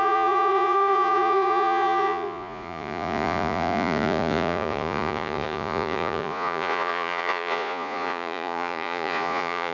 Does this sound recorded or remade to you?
remade